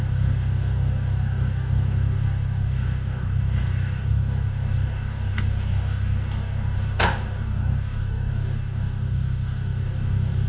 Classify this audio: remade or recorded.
remade